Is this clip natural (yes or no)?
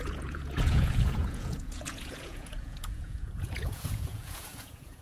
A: no